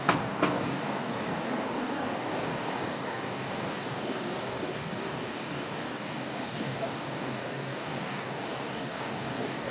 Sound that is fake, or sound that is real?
fake